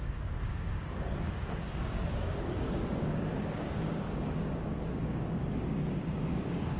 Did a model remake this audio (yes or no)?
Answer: yes